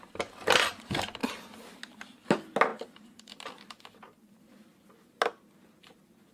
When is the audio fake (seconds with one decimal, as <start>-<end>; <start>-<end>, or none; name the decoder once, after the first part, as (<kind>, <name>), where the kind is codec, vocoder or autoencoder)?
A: 2.7-3.3 (vocoder, BigVGAN v2)